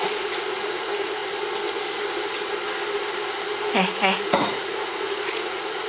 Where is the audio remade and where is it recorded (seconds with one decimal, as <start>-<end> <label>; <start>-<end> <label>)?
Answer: 0.0-1.2 remade; 1.2-3.7 recorded; 3.7-5.9 remade